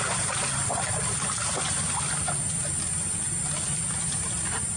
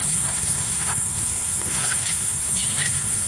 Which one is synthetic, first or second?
second